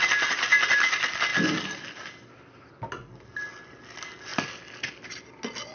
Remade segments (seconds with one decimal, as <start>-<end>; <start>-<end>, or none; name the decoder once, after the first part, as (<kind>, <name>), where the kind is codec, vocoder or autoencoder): none